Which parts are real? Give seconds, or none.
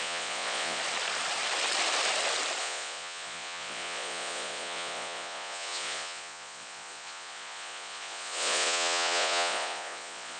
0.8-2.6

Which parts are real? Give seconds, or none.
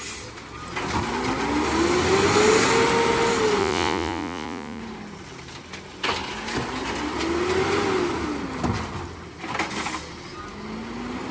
0.0-3.6; 4.8-11.3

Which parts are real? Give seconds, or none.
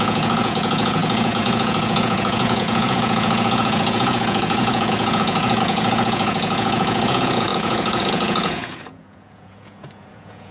none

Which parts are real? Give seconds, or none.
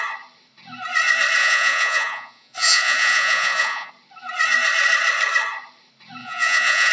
0.0-1.4; 3.9-6.2